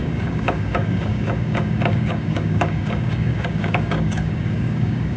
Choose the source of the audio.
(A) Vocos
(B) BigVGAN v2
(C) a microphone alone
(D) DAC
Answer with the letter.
D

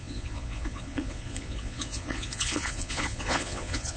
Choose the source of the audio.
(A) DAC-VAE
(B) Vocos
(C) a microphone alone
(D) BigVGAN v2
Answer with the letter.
B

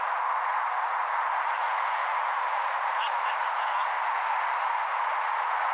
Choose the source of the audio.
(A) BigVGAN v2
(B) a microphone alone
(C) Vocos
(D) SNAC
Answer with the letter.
C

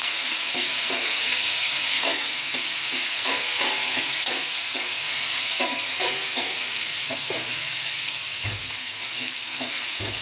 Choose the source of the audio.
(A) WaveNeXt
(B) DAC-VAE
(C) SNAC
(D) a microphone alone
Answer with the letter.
C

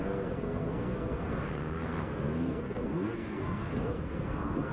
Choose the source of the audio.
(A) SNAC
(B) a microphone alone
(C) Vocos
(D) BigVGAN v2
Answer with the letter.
A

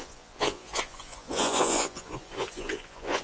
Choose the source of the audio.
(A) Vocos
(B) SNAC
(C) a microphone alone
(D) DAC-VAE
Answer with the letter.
A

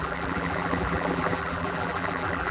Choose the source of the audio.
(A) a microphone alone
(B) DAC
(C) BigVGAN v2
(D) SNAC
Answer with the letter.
C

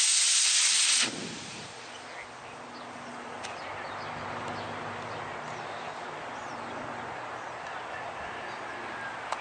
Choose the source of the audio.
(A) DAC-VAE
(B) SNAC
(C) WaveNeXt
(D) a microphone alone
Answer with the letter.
D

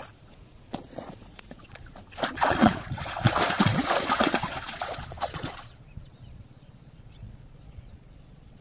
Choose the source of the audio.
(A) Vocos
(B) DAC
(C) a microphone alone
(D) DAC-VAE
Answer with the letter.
A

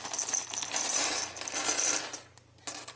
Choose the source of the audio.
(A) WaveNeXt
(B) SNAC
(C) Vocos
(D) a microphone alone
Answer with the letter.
D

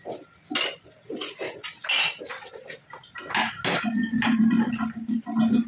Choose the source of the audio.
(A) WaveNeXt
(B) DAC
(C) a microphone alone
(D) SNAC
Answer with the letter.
C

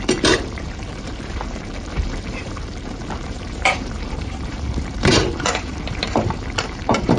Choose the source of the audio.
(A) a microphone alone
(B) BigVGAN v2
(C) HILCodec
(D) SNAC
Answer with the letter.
B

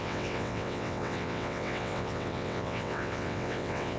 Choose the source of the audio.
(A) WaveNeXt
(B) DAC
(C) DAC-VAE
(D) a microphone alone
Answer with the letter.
A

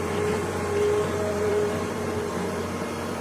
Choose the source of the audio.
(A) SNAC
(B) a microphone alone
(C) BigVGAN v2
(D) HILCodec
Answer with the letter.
C